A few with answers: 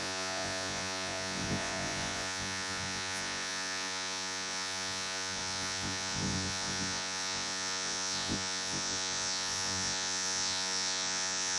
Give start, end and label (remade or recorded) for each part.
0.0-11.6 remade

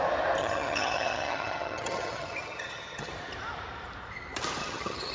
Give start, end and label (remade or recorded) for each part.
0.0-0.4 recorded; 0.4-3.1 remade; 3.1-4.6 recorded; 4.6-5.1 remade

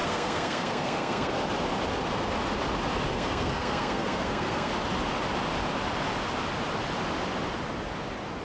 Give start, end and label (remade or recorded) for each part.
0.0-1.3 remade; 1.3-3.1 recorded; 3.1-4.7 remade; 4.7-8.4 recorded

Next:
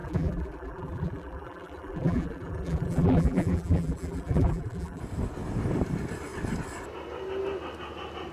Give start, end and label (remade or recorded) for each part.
0.0-5.0 remade; 5.0-8.3 recorded

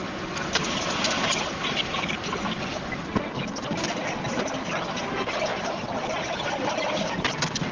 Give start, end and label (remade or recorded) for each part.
0.0-7.7 recorded

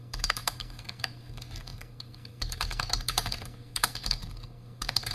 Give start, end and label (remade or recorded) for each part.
0.0-5.1 remade

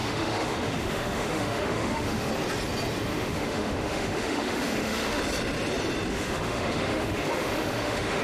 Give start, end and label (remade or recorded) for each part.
0.0-2.3 remade; 2.3-3.1 recorded; 3.1-5.2 remade; 5.2-6.1 recorded; 6.1-8.2 remade